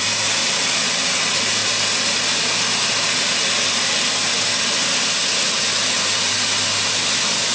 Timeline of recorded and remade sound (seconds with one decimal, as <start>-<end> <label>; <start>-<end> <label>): 0.0-7.5 recorded